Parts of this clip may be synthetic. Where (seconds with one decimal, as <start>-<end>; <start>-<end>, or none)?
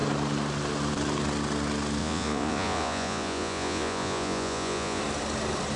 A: 2.0-5.0